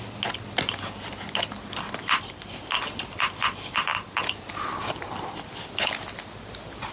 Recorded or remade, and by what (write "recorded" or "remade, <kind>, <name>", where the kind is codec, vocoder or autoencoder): recorded